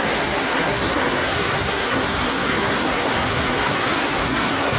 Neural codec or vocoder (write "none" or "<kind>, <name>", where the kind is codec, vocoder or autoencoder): codec, SNAC